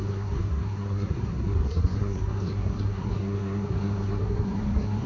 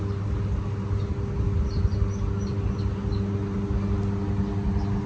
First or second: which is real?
second